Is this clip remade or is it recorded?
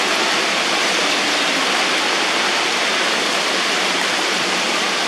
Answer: recorded